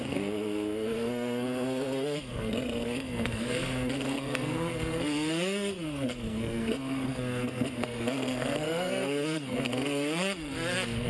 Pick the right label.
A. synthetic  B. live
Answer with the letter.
A